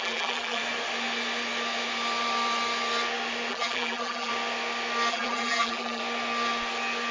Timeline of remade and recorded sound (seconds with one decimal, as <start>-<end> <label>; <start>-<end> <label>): 0.0-0.6 remade; 0.6-3.5 recorded; 3.5-4.3 remade; 4.3-5.1 recorded; 5.1-6.0 remade; 6.0-7.1 recorded